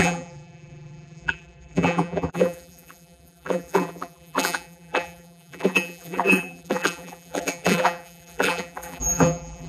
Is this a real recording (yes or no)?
no